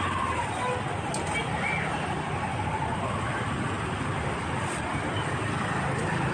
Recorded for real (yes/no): yes